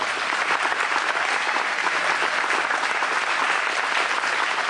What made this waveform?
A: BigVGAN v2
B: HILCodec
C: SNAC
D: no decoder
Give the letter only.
D